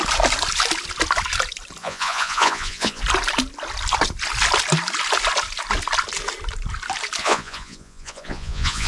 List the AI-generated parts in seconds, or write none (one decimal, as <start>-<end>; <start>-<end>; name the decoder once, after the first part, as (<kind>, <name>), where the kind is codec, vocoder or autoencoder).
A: 1.8-3.0 (vocoder, Vocos); 7.2-8.9